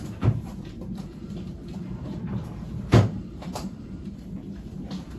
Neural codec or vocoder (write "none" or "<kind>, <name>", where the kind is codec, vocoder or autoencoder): vocoder, BigVGAN v2